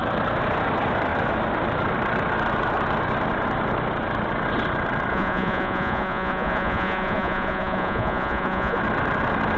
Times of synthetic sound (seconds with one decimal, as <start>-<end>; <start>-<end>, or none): 5.1-8.8